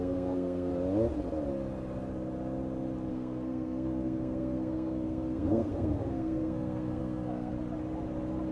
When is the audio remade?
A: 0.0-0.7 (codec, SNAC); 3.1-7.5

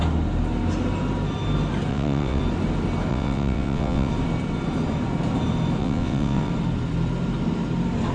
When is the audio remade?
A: 1.9-2.4 (vocoder, WaveNeXt); 3.1-4.1; 5.8-6.5